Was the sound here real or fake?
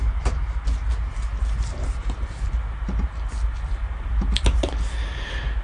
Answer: real